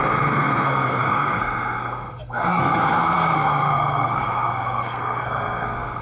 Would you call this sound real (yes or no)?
no